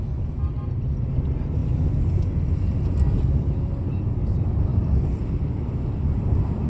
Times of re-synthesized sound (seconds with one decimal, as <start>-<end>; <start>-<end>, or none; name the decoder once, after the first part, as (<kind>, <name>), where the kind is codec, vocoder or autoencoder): none